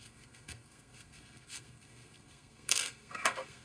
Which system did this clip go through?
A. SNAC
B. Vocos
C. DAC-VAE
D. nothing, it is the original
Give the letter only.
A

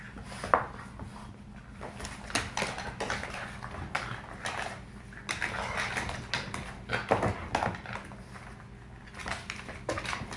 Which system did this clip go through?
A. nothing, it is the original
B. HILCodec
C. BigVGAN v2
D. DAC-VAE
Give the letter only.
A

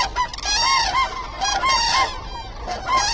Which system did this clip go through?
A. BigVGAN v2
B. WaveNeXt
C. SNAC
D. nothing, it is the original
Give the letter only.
D